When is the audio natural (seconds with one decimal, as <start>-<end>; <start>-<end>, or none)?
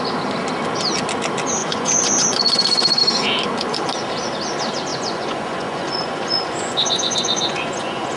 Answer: 0.0-1.6; 3.0-4.9